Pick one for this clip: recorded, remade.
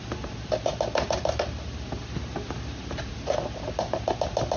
recorded